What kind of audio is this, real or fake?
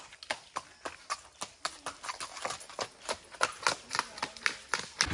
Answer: real